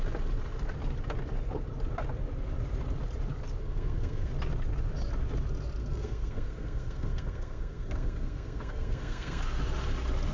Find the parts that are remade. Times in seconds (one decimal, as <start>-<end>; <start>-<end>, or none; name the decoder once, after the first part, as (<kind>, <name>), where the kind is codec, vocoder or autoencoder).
3.6-4.3 (codec, SNAC); 5.8-9.4